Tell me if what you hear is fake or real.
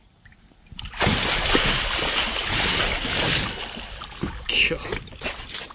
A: real